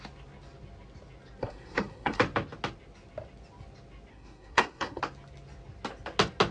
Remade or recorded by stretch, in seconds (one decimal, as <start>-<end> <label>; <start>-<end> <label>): 0.0-1.4 recorded; 1.4-2.2 remade; 2.2-4.1 recorded; 4.1-5.0 remade; 5.0-6.5 recorded